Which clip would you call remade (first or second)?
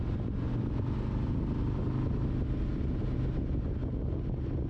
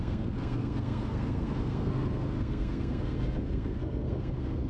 second